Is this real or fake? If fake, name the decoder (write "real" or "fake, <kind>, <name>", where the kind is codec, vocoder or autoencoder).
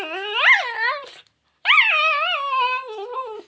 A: real